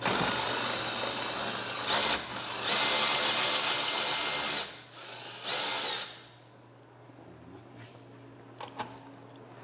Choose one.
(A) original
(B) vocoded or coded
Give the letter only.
A